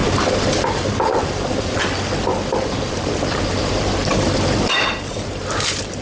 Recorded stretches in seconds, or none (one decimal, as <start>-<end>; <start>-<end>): 1.8-2.5